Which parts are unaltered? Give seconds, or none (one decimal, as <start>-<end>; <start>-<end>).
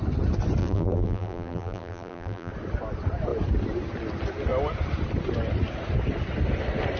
0.0-0.6; 2.5-7.0